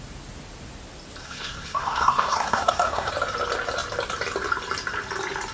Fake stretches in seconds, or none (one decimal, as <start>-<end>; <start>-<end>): 1.2-3.1